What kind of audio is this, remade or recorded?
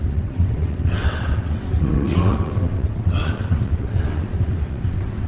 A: remade